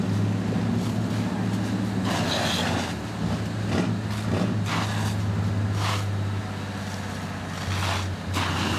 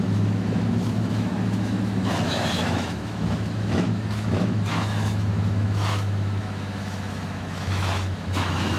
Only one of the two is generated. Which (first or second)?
second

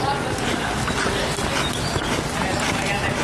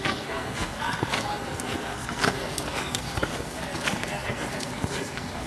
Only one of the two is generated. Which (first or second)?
second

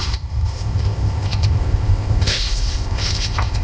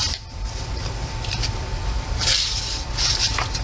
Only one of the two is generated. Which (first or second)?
first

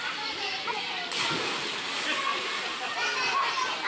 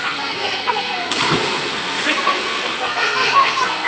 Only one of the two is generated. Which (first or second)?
second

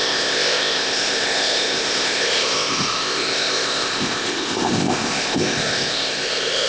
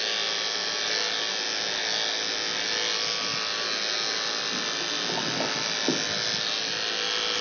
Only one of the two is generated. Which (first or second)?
first